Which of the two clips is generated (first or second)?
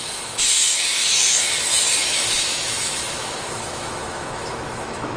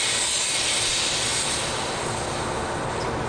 first